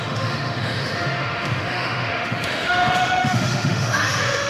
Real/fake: fake